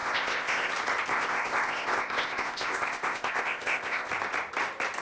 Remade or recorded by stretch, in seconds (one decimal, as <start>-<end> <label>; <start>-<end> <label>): 0.0-0.7 remade; 0.7-1.1 recorded; 1.1-4.1 remade; 4.1-5.0 recorded